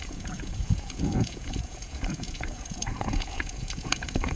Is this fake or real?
fake